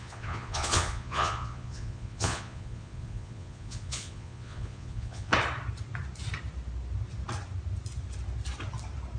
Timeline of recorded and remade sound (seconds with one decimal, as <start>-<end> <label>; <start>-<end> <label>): 0.0-5.3 remade; 5.3-9.2 recorded